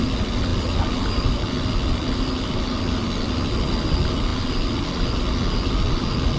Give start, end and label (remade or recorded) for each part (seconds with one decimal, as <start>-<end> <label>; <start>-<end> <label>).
0.0-6.4 recorded

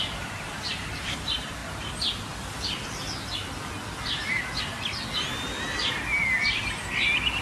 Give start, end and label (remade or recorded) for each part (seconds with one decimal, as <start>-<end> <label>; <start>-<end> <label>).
0.0-7.4 recorded